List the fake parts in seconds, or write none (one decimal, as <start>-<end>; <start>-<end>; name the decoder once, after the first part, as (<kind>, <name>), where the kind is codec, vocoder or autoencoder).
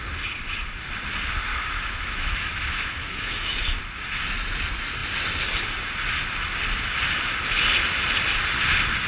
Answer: 1.5-3.8 (autoencoder, DAC-VAE)